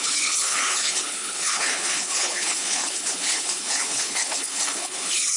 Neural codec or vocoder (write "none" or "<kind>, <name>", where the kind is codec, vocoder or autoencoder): codec, HILCodec